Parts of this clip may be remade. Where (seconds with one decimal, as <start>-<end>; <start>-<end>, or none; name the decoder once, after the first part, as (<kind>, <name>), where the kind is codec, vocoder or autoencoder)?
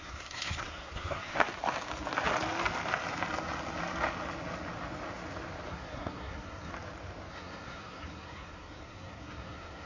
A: 0.0-1.4 (codec, SNAC); 5.7-6.7; 7.3-9.9